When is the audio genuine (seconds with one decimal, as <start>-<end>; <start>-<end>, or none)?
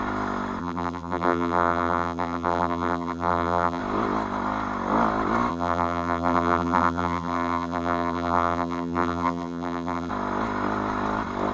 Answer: 0.0-0.6; 3.8-5.5; 10.1-11.5